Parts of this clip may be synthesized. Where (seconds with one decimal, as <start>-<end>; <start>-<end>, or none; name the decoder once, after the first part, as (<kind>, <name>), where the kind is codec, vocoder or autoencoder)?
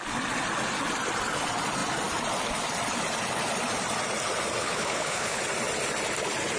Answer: 4.6-5.4 (codec, HILCodec)